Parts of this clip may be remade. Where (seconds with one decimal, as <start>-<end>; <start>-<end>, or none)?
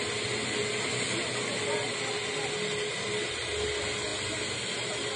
none